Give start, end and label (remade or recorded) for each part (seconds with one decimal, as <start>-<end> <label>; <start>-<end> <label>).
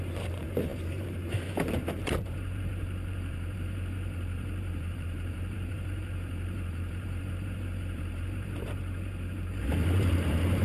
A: 0.0-10.6 remade